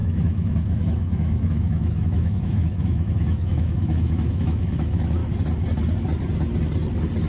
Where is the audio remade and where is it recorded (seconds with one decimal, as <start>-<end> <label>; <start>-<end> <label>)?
0.0-5.2 remade; 5.2-7.3 recorded

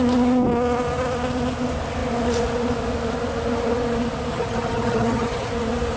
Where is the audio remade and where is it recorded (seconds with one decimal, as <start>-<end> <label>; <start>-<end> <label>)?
0.0-4.3 recorded; 4.3-5.5 remade; 5.5-6.0 recorded

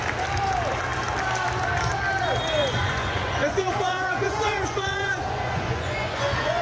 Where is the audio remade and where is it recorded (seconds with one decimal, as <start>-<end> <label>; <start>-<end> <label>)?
0.0-2.6 recorded; 2.6-6.6 remade

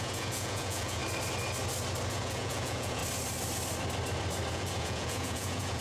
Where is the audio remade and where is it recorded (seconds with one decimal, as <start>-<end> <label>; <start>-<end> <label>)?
0.0-1.0 remade; 1.0-2.1 recorded; 2.1-3.0 remade; 3.0-4.5 recorded; 4.5-5.8 remade

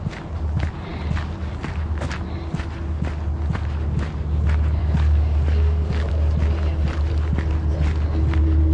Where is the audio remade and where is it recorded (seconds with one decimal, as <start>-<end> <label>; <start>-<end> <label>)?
0.0-4.8 recorded; 4.8-6.1 remade; 6.1-8.7 recorded